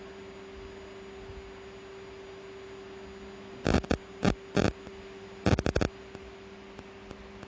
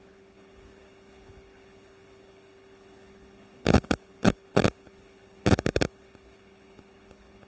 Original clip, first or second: first